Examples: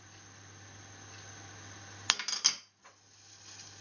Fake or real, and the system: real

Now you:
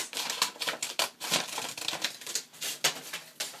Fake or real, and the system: real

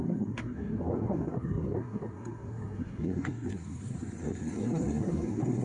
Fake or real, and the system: fake, codec, SNAC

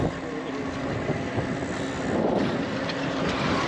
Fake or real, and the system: real